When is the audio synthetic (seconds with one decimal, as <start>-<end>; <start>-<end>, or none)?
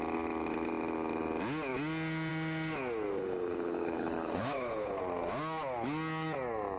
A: 3.1-5.0